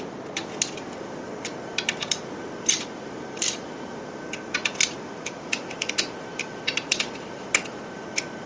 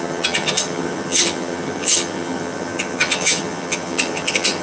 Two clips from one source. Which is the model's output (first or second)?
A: second